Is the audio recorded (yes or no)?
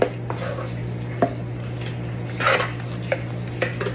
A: yes